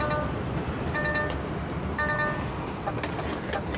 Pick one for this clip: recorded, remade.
recorded